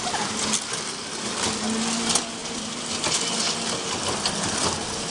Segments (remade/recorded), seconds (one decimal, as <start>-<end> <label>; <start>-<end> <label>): 0.0-5.1 recorded